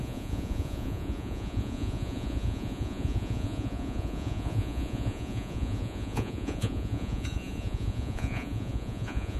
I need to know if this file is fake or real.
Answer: fake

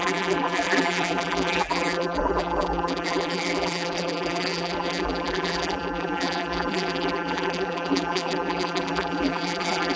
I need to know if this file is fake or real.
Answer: fake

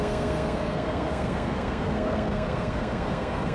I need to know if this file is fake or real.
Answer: fake